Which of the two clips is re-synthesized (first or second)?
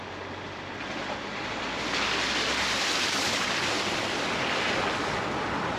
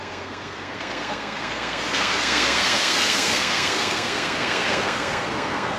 second